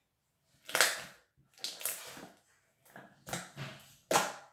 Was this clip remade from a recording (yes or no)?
no